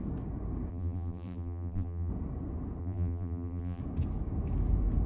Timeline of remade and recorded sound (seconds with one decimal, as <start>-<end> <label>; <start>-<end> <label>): 0.0-0.7 recorded; 0.7-2.1 remade; 2.1-2.8 recorded; 2.8-3.8 remade; 3.8-5.1 recorded